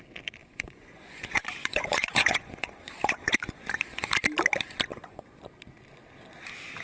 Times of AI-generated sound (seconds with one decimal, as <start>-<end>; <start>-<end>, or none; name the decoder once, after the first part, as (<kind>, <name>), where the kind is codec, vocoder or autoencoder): 0.4-4.1 (vocoder, Vocos); 4.9-5.4